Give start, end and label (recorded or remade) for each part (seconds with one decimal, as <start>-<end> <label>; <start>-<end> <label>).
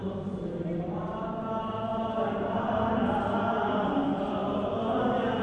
0.0-1.4 remade; 1.4-1.9 recorded; 1.9-2.6 remade; 2.6-5.4 recorded